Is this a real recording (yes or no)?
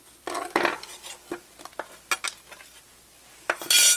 yes